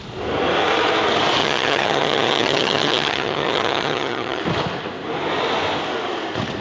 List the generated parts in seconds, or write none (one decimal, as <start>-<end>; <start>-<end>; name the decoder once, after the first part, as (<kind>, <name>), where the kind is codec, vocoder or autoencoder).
1.4-4.4 (vocoder, HiFi-GAN)